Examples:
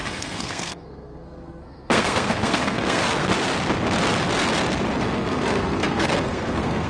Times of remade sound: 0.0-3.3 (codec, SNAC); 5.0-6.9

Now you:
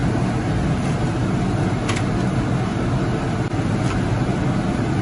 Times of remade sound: none

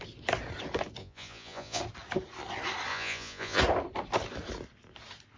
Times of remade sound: 1.0-1.8 (vocoder, Vocos); 2.9-3.6

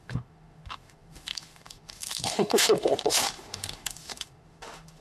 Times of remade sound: 0.0-5.0 (autoencoder, DAC-VAE)

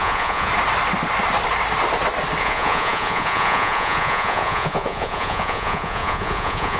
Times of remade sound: 0.0-0.5 (vocoder, Vocos); 2.4-6.8

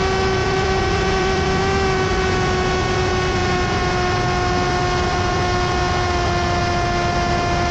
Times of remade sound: 0.4-1.6 (vocoder, BigVGAN v2)